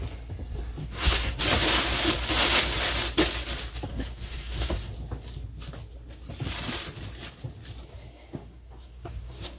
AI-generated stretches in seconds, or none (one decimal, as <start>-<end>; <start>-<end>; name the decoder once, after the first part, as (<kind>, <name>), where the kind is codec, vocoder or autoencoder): 0.8-1.4 (codec, SNAC); 3.9-4.9; 7.9-9.6

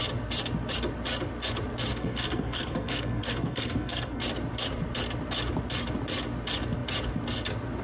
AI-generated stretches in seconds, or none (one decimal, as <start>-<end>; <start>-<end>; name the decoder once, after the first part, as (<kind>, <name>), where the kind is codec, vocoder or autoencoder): 1.9-4.2 (codec, SNAC)

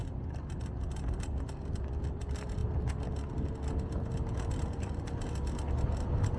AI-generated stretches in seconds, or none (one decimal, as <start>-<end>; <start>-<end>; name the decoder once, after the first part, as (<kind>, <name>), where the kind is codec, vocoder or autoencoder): none